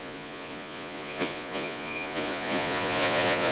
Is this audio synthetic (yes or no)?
yes